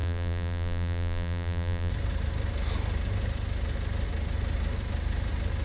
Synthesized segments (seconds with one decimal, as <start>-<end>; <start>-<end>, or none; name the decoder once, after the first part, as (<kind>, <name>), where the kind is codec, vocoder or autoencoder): 0.0-1.9 (vocoder, BigVGAN v2)

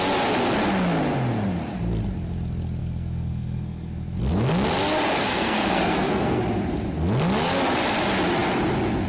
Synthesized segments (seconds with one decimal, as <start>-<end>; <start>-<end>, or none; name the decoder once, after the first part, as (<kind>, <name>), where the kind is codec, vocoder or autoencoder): 2.8-4.2 (codec, SNAC); 5.2-6.4